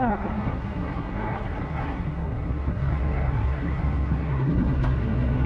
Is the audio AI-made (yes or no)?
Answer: yes